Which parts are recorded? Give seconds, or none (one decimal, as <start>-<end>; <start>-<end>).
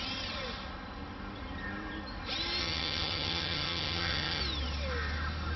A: 0.0-2.6; 4.4-5.6